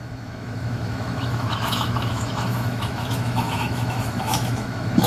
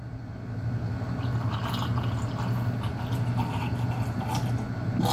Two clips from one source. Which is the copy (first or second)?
first